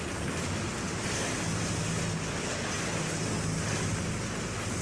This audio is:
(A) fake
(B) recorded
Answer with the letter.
B